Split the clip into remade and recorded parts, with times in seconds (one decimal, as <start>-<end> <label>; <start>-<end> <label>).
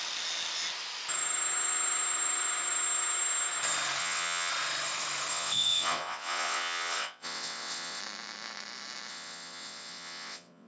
0.0-4.0 recorded; 4.0-4.5 remade; 4.5-5.3 recorded; 5.3-8.0 remade; 8.0-9.1 recorded; 9.1-10.7 remade